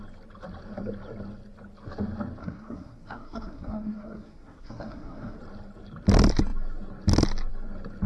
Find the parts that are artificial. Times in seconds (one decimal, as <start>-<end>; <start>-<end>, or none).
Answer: 2.4-5.4